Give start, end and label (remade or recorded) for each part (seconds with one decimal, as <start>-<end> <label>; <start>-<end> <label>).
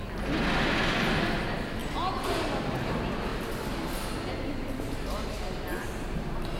0.0-6.6 recorded